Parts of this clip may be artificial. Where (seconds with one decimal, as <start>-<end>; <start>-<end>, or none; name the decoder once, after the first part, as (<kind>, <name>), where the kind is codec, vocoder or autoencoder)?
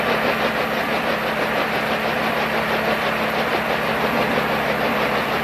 0.8-3.9 (vocoder, BigVGAN v2)